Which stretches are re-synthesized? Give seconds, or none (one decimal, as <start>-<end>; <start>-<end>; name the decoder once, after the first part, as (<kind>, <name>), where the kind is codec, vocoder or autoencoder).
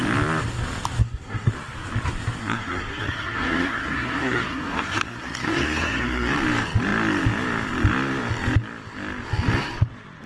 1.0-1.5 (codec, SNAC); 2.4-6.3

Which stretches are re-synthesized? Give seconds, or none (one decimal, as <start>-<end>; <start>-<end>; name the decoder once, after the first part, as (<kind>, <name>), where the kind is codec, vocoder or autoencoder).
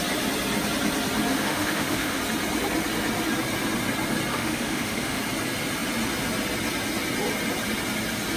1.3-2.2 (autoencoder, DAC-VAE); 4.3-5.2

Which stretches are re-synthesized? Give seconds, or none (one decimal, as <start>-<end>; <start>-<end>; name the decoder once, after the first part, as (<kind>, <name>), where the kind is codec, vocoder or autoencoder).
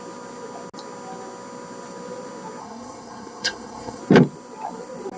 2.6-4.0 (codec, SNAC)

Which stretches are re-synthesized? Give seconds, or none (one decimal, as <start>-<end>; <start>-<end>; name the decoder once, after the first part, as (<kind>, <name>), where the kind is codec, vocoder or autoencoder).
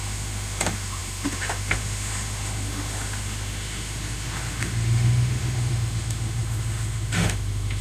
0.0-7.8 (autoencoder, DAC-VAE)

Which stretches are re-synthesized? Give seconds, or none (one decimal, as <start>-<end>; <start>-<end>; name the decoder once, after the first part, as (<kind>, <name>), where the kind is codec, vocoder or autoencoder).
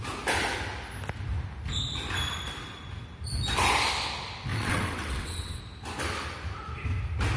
4.5-5.6 (vocoder, WaveNeXt)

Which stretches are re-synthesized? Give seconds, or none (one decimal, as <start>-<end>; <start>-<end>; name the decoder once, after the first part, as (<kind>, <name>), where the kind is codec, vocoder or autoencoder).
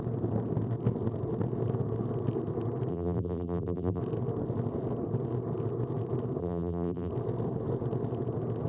2.9-4.0 (vocoder, BigVGAN v2); 6.4-7.1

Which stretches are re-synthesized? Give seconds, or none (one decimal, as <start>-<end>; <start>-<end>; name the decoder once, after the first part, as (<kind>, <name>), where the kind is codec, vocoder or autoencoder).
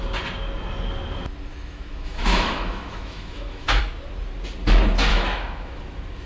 1.5-3.8 (autoencoder, DAC-VAE); 5.1-5.8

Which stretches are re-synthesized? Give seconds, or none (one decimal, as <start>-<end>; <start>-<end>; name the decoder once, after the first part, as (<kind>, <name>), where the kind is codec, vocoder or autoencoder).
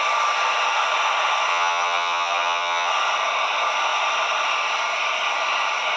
1.5-2.9 (vocoder, HiFi-GAN)